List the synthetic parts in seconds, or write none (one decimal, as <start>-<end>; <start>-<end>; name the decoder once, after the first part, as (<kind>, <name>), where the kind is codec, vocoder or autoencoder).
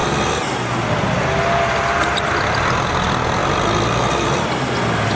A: 3.4-4.7 (vocoder, BigVGAN v2)